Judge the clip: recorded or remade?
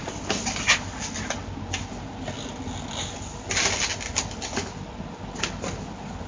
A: recorded